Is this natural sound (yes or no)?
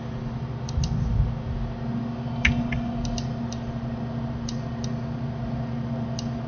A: yes